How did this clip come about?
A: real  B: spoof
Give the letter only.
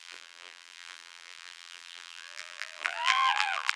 B